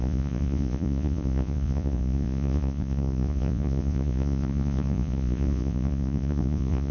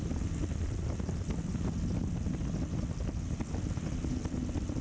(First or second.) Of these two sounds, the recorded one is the second